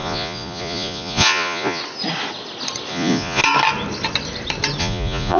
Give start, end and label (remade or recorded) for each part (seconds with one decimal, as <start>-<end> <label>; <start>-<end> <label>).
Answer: 0.0-1.8 remade; 1.8-2.9 recorded; 2.9-3.4 remade; 3.4-4.8 recorded; 4.8-5.4 remade